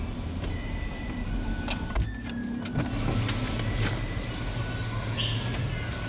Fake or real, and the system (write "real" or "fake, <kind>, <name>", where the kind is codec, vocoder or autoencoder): real